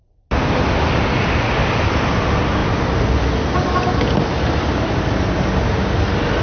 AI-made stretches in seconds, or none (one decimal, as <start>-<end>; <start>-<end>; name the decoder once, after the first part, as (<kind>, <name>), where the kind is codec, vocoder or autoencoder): none